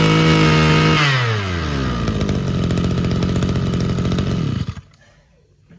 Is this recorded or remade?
recorded